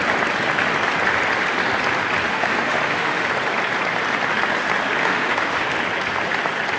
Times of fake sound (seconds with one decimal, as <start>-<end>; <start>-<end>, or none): 2.3-3.3; 5.0-5.8